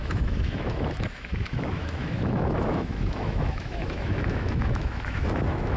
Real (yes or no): no